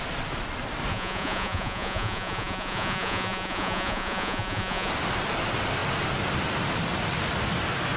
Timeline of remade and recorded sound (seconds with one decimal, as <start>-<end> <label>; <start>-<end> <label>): 0.0-0.9 recorded; 0.9-4.9 remade; 4.9-8.0 recorded